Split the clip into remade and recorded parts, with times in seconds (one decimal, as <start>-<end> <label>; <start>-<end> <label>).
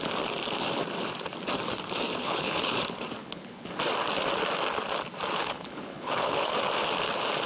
0.0-2.2 recorded; 2.2-2.8 remade; 2.8-3.2 recorded; 3.2-3.7 remade; 3.7-5.4 recorded; 5.4-6.6 remade; 6.6-7.5 recorded